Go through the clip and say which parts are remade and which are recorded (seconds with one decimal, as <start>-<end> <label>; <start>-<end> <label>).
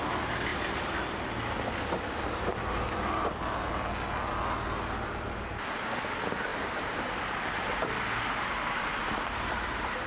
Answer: 0.0-0.5 recorded; 0.5-3.0 remade; 3.0-6.5 recorded; 6.5-7.2 remade; 7.2-10.1 recorded